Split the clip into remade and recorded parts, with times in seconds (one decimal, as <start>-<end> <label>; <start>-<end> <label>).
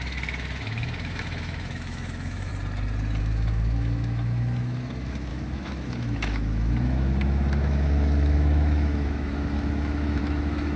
0.0-2.5 remade; 2.5-3.2 recorded; 3.2-10.8 remade